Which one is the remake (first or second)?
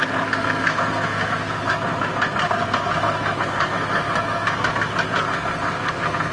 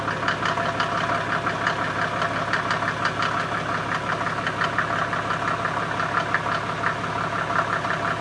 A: first